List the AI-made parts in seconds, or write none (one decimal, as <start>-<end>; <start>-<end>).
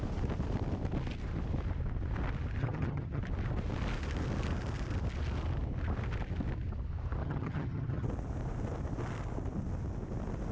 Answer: 2.6-3.2; 7.2-8.1